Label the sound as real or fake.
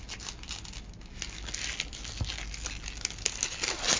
real